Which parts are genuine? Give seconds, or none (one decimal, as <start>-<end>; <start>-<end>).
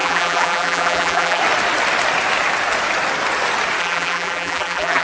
1.4-3.8